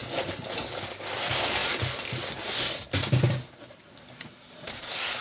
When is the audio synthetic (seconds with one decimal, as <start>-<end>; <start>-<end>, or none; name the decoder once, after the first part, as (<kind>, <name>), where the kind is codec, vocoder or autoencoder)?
none